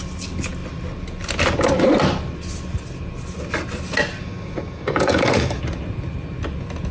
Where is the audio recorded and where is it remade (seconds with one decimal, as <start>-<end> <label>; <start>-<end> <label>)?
0.0-4.2 recorded; 4.2-5.6 remade; 5.6-6.9 recorded